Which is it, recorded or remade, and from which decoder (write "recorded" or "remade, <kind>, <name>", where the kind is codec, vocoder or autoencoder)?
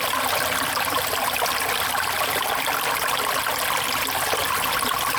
recorded